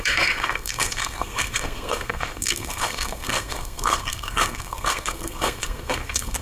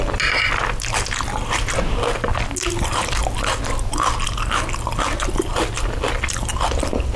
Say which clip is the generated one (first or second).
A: first